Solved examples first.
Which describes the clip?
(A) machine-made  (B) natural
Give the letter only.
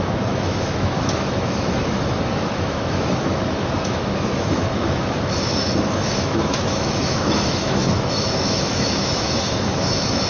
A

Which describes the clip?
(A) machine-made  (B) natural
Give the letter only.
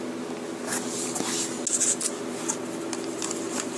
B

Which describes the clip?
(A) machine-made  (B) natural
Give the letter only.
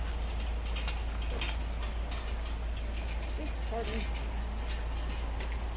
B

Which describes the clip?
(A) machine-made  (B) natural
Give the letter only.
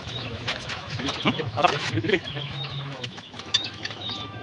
A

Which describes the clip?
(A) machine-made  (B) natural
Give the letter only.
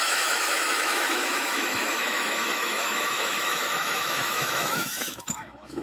A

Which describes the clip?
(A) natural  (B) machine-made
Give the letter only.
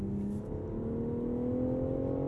A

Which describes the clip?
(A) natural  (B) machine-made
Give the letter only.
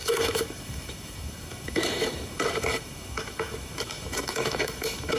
B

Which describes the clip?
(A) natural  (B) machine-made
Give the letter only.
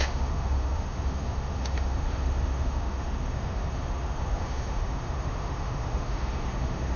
B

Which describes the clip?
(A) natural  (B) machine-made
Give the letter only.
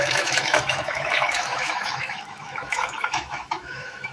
B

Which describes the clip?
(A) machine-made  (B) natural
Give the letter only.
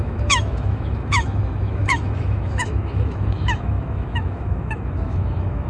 A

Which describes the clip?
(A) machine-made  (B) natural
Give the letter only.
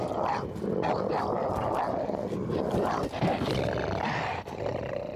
B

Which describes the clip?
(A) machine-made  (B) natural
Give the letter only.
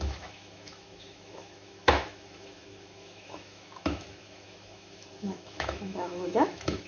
A